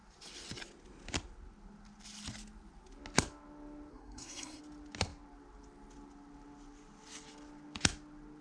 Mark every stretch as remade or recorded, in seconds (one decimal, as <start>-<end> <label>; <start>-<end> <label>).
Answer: 0.0-3.9 recorded; 3.9-4.6 remade; 4.6-8.4 recorded